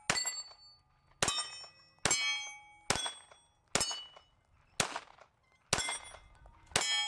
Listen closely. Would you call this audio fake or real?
real